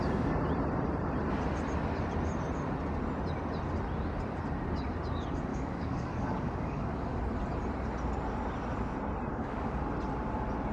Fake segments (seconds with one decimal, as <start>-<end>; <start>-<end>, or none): 5.5-7.2; 9.3-9.8